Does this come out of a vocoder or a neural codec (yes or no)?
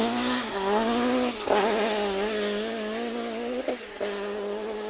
no